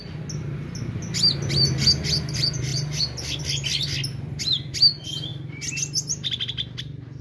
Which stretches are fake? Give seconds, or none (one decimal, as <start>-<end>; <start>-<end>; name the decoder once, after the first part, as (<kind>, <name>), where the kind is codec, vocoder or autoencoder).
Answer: none